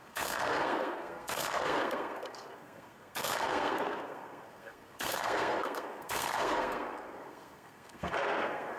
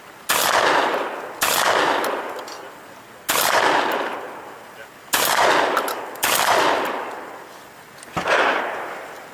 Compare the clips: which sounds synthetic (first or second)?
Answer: first